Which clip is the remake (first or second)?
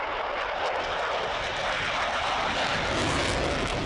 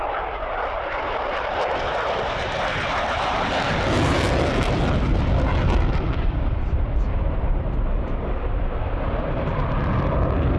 second